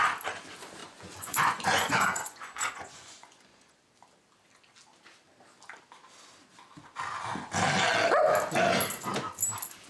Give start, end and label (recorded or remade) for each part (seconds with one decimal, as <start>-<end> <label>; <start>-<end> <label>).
0.0-0.8 recorded; 0.8-3.8 remade; 3.8-9.9 recorded